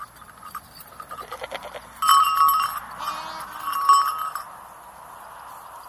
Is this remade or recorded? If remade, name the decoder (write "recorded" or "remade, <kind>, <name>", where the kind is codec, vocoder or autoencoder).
recorded